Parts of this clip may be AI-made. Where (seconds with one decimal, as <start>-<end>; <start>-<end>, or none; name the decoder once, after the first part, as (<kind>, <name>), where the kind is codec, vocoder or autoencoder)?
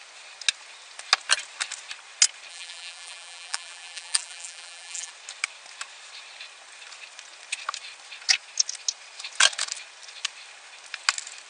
2.5-5.1 (vocoder, BigVGAN v2)